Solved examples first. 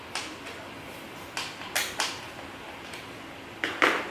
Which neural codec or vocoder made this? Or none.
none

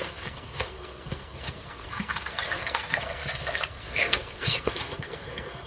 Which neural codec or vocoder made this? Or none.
codec, SNAC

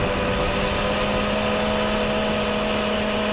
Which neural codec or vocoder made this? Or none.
none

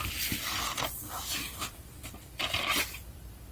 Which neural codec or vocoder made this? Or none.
vocoder, BigVGAN v2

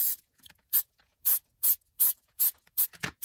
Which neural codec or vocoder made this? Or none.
vocoder, Vocos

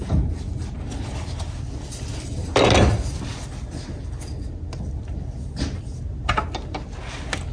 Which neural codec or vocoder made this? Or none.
none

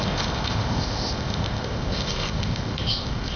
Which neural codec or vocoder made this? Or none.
codec, ZipCodec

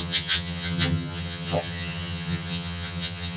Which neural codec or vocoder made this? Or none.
vocoder, HiFi-GAN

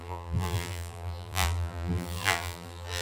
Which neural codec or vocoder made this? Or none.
vocoder, BigVGAN v2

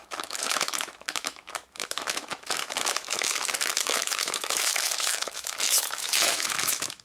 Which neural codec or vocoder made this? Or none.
autoencoder, DAC-VAE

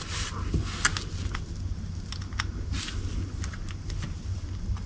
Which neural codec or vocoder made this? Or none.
none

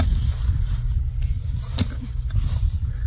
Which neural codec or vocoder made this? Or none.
none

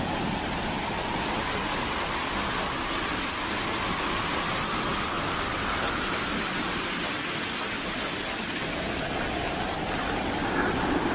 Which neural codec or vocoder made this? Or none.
none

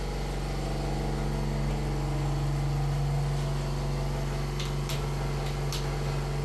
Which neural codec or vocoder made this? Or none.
none